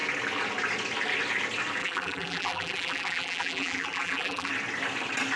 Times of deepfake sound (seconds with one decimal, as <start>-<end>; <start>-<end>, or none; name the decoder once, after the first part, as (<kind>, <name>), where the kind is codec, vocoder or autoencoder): 1.8-4.5 (vocoder, BigVGAN v2)